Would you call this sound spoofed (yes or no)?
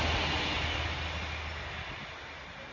no